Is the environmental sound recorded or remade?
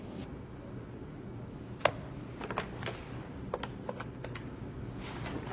recorded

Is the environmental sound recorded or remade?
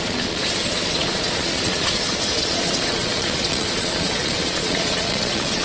remade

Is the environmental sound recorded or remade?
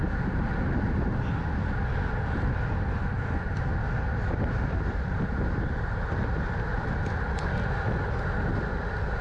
recorded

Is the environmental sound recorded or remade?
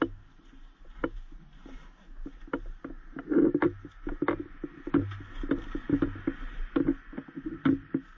recorded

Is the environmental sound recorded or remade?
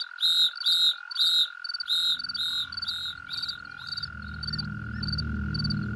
recorded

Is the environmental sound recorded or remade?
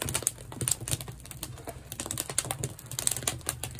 recorded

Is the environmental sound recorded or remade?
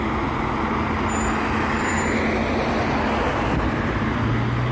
recorded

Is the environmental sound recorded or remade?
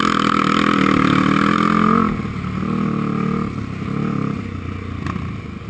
recorded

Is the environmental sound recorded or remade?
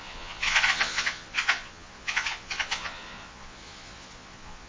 remade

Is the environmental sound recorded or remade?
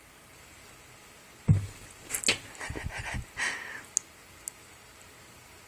recorded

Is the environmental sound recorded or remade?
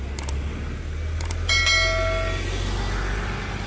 recorded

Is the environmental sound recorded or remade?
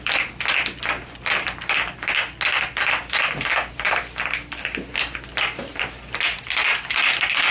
recorded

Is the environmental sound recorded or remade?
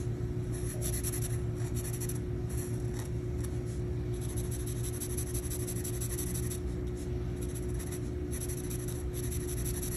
recorded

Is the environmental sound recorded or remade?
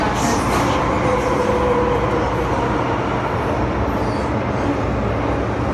recorded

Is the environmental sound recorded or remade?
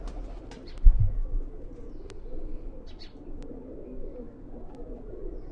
recorded